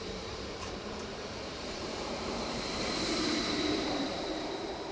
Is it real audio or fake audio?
fake